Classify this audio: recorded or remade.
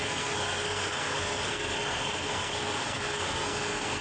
remade